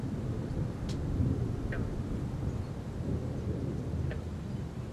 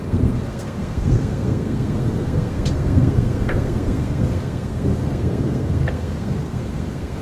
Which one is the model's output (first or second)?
second